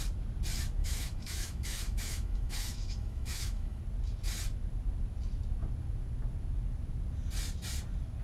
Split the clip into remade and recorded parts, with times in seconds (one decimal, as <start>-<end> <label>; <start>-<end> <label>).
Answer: 0.0-0.8 recorded; 0.8-3.8 remade; 3.8-8.2 recorded